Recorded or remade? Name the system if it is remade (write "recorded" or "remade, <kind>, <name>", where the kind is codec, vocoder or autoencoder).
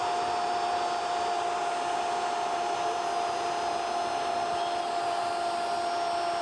recorded